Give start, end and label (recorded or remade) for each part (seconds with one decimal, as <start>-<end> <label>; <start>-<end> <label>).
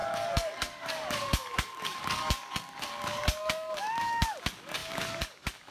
0.0-5.7 remade